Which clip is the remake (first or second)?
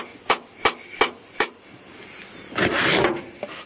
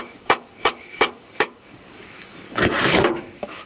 second